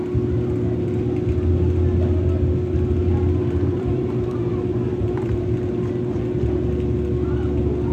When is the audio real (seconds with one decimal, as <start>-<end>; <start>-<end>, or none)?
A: 0.0-3.4; 5.5-7.9